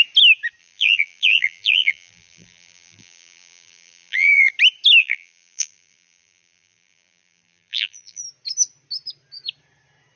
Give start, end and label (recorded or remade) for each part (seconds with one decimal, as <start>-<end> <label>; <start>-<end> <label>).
0.0-0.6 recorded; 0.6-4.5 remade; 4.5-5.0 recorded; 5.0-8.2 remade; 8.2-10.2 recorded